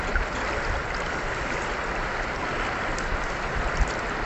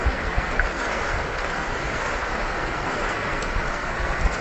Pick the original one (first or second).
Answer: first